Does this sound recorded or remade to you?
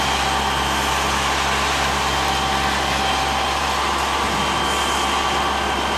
recorded